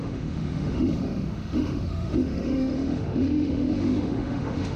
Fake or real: fake